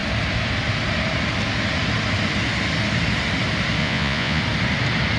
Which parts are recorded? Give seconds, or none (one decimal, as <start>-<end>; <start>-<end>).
0.0-3.8; 4.4-5.2

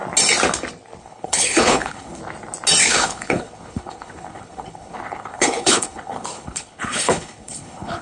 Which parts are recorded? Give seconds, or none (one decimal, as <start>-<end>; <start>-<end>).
0.0-1.0; 2.2-2.8

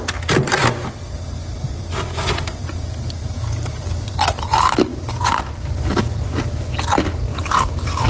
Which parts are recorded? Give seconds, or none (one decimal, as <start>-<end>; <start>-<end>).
0.0-1.5; 4.5-4.9; 6.3-7.3

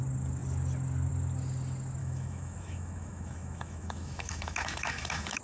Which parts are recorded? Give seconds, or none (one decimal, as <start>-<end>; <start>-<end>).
0.0-2.0

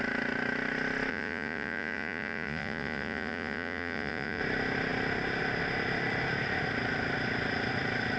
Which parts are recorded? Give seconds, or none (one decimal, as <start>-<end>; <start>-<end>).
0.0-1.1; 4.4-8.2

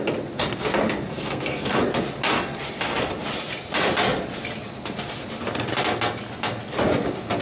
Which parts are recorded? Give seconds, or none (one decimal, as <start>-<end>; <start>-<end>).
0.0-1.1; 1.8-7.4